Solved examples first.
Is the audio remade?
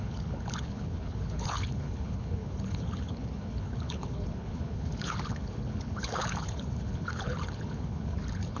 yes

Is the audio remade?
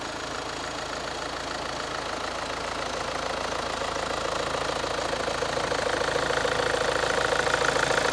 no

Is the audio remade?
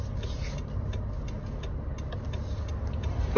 no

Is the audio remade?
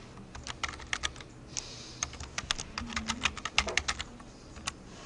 no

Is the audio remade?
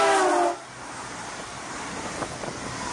no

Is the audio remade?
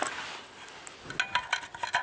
no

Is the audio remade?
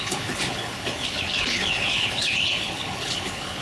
yes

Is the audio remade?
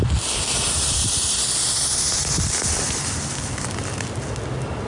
no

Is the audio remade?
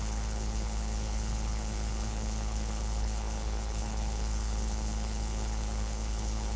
yes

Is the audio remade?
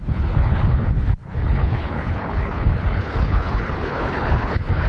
yes